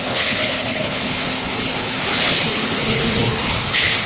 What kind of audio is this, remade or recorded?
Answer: remade